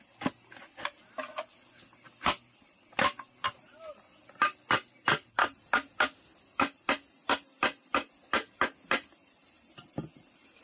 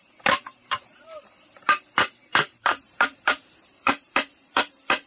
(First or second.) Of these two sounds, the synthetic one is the second